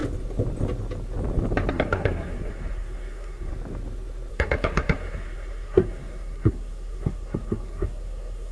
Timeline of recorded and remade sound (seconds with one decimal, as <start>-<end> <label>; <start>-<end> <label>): 0.0-1.7 recorded; 1.7-3.5 remade; 3.5-4.3 recorded; 4.3-8.5 remade